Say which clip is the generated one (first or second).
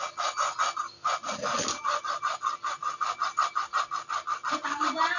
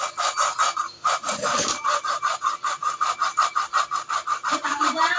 second